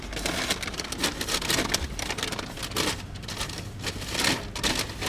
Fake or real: real